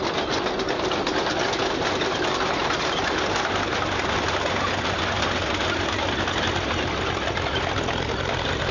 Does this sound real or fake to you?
real